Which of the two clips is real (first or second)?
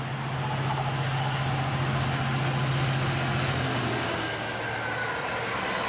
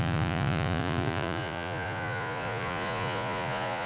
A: first